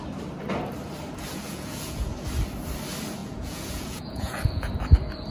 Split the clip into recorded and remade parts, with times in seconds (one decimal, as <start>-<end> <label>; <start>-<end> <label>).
0.0-1.4 recorded; 1.4-2.1 remade; 2.1-3.2 recorded; 3.2-4.7 remade; 4.7-5.3 recorded